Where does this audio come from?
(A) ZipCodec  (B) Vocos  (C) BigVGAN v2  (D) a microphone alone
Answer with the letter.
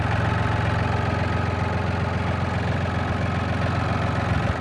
D